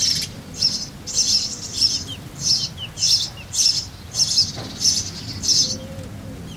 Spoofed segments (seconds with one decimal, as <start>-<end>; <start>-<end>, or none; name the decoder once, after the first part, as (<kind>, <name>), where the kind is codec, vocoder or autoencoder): none